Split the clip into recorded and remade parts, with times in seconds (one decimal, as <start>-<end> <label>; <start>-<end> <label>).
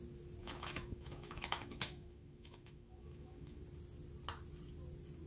0.0-0.4 recorded; 0.4-3.6 remade; 3.6-5.3 recorded